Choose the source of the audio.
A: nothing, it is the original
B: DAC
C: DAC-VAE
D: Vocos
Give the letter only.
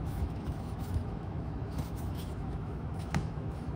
C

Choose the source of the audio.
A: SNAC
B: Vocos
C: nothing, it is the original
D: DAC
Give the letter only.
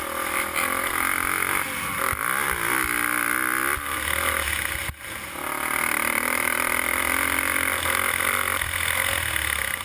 C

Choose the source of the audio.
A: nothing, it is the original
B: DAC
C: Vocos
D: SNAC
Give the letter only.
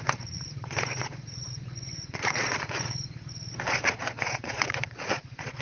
C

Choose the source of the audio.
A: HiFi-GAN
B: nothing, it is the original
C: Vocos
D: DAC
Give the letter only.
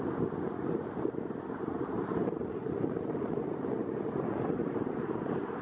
B